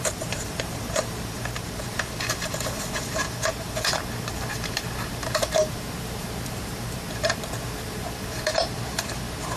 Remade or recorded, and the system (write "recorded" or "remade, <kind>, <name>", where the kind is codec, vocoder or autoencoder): remade, vocoder, BigVGAN v2